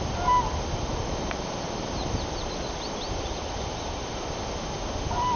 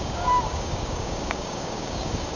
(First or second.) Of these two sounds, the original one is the first